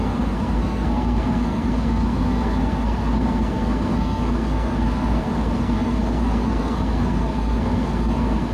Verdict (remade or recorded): remade